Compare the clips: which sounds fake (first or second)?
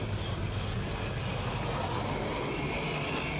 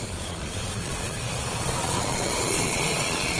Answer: second